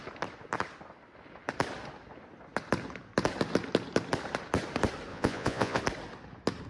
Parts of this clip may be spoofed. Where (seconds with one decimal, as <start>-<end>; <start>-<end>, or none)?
5.1-5.8